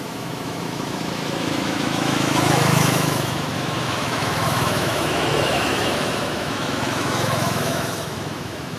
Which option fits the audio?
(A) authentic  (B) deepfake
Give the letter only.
B